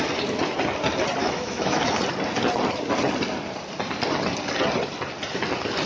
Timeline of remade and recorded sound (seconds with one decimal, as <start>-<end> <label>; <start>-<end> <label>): 0.0-1.2 recorded; 1.2-2.0 remade; 2.0-5.9 recorded

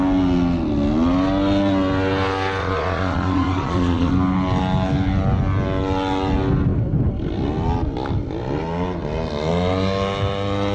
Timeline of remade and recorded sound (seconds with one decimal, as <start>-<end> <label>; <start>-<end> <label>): 0.0-2.6 recorded; 2.6-4.1 remade; 4.1-10.7 recorded